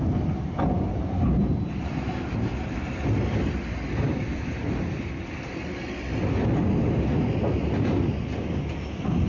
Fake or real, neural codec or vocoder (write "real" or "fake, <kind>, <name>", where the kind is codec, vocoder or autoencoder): real